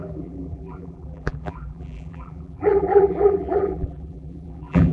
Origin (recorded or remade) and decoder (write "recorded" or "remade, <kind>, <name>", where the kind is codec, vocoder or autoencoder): remade, vocoder, BigVGAN v2